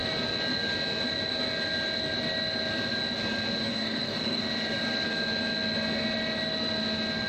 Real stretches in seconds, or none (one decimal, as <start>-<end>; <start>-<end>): 0.0-3.7; 4.4-7.3